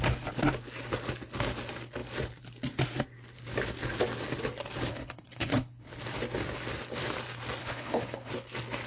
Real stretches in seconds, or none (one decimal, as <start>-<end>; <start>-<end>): 0.0-4.9; 5.9-7.6; 8.3-8.9

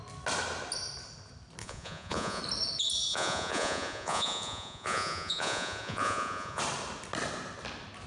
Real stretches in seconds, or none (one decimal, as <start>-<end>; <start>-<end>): 0.0-1.6; 2.4-3.1; 6.6-8.1

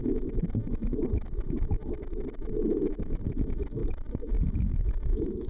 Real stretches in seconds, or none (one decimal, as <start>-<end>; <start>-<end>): 0.0-0.9; 3.3-3.8; 4.3-5.5

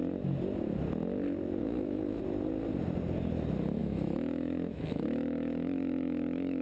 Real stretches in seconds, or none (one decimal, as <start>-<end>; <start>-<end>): 0.0-1.6; 2.2-3.8

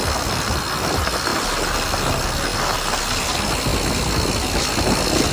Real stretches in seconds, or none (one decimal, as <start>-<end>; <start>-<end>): 0.0-5.3

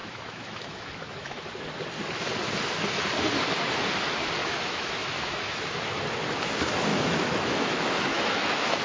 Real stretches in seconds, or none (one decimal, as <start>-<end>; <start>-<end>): 1.5-4.4; 5.6-6.9

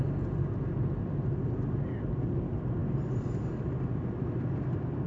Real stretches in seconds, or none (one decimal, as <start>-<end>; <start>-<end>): 0.0-5.1